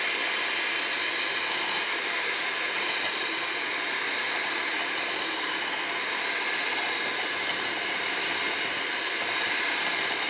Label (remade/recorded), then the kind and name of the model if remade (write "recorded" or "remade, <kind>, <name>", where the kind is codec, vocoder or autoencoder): recorded